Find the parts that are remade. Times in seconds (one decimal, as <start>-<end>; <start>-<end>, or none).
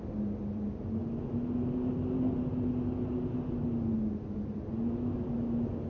none